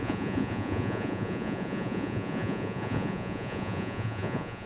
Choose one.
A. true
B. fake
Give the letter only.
B